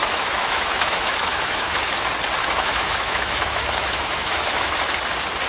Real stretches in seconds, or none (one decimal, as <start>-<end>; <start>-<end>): 1.8-2.4; 4.7-5.5